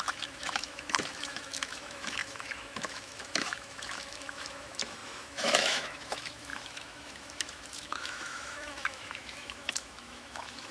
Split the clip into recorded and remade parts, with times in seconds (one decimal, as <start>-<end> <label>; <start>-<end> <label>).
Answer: 0.0-10.7 remade